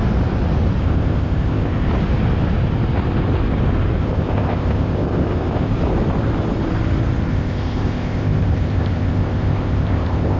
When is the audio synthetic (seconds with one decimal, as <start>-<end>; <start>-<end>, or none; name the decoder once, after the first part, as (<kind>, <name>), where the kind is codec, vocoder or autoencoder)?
0.8-1.9 (codec, ZipCodec); 4.0-5.7; 7.3-10.4